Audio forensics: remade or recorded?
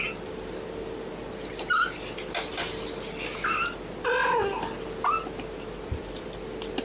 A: recorded